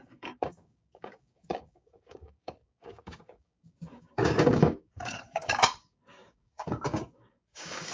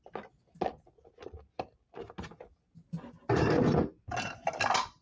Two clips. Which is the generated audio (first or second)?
first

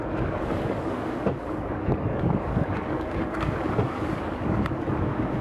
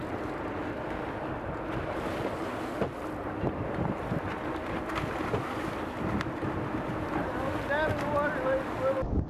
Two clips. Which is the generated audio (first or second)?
first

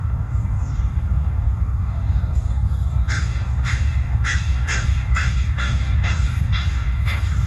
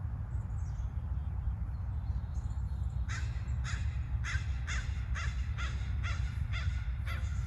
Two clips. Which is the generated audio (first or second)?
first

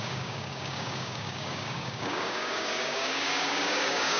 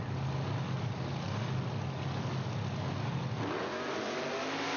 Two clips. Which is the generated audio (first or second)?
first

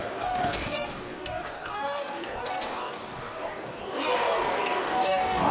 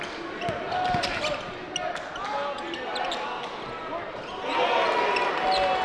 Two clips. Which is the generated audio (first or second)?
first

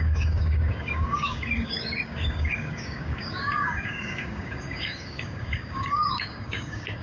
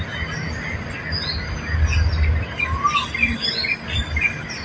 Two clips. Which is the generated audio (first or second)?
first